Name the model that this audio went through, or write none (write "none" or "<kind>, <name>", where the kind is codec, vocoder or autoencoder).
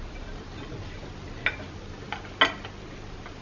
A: none